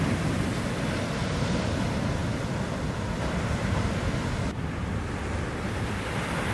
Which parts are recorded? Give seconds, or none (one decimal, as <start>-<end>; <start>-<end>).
0.0-6.5